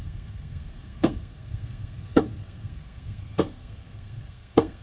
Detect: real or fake fake